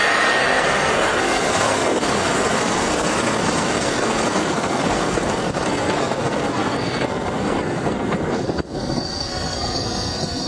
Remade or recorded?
remade